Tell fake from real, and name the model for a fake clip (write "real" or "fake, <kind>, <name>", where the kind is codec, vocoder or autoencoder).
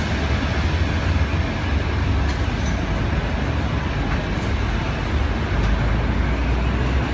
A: real